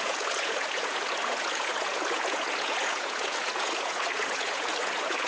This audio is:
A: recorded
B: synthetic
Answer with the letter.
B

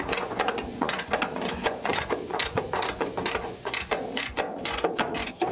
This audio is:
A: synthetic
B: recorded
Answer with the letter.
A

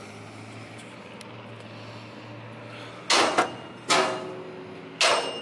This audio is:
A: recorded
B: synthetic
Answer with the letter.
A